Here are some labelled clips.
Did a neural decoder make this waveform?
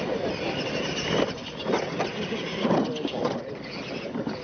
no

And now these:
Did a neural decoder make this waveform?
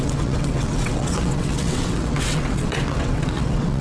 yes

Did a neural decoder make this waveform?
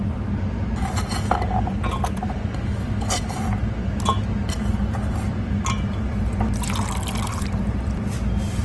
no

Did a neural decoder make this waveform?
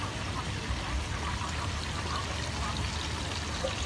no